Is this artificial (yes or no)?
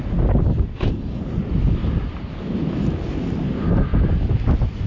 no